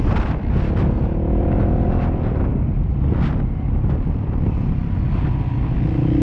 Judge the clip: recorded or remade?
recorded